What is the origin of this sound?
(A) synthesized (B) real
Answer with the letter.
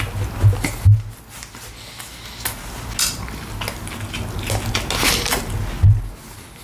B